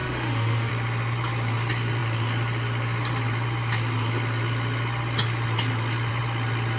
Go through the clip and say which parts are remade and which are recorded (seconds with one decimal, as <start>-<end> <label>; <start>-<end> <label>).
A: 0.0-0.7 remade; 0.7-6.8 recorded